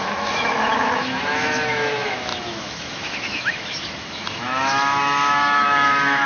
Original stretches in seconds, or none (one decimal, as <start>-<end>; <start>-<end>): none